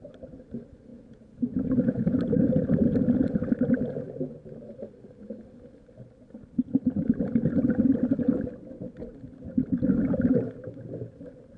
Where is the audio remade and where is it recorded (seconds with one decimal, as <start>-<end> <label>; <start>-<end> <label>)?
0.0-0.9 recorded; 0.9-2.2 remade; 2.2-11.6 recorded